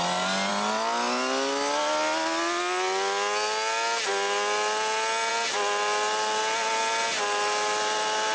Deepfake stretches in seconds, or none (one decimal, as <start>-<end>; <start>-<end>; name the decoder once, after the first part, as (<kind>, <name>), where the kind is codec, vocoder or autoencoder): none